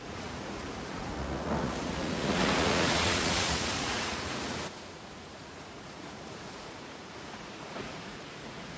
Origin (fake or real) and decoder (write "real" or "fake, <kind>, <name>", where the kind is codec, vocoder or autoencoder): fake, vocoder, Vocos